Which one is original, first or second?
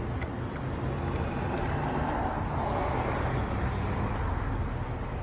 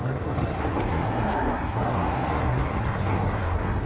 first